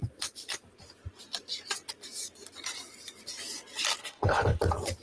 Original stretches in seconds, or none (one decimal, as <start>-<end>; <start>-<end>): 0.0-4.0; 4.6-5.0